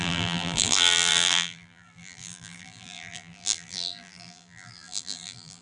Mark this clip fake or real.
fake